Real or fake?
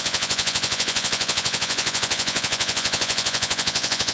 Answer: fake